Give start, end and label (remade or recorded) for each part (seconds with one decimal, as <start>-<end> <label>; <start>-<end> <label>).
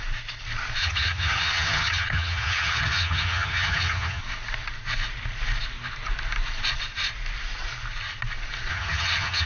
0.0-0.8 recorded; 0.8-4.2 remade; 4.2-8.7 recorded; 8.7-9.5 remade